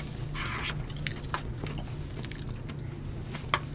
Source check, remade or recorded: recorded